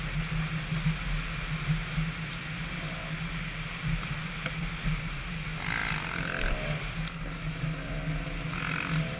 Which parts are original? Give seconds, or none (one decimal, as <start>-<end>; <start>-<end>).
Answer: 0.0-9.2

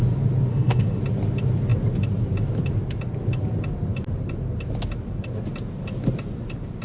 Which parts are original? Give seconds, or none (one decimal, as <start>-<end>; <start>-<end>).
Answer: 0.0-0.5; 1.0-6.8

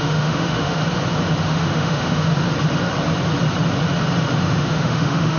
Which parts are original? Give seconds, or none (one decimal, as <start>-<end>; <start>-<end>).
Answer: 0.8-1.4; 2.3-4.4

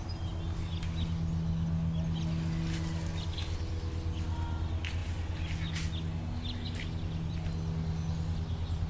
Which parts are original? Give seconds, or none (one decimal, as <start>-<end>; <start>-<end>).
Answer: 0.0-8.9